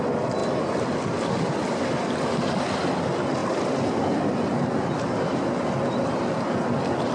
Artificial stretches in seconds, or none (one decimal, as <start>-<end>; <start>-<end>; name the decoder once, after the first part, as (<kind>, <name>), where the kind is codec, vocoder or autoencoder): none